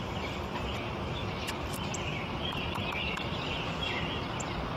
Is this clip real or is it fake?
fake